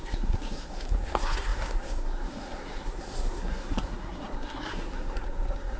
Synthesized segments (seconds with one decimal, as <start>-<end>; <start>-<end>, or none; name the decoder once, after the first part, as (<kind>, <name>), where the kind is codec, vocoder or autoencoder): 0.0-5.8 (codec, SNAC)